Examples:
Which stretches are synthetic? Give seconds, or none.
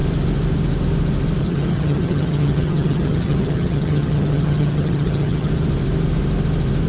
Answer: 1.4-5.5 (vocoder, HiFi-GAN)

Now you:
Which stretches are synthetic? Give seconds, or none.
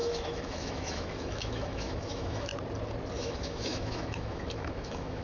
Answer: 0.0-2.5 (autoencoder, DAC-VAE); 3.2-5.2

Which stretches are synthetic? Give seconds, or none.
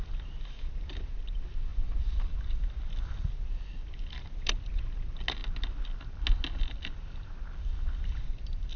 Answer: none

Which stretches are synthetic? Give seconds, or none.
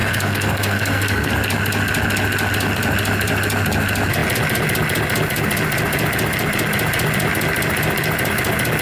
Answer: 0.0-1.3 (codec, SNAC)